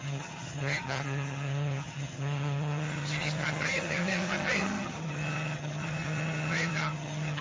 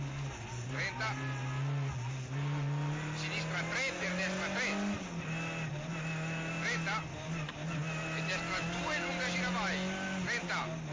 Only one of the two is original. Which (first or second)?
second